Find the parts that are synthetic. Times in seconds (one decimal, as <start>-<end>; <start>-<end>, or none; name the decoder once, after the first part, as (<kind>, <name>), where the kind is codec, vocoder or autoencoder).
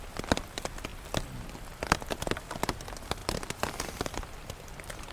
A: 0.0-3.2 (vocoder, BigVGAN v2); 3.9-5.1